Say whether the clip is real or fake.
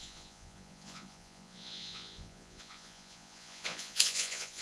fake